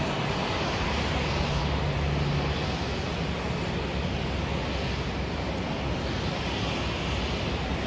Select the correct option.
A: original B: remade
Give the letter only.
A